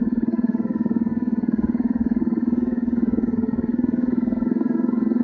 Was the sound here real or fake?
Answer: fake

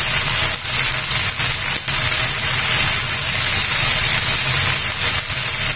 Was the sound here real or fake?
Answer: real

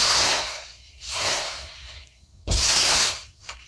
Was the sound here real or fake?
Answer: fake